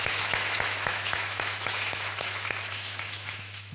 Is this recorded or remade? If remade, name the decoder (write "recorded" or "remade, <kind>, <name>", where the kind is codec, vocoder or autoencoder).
remade, autoencoder, DAC-VAE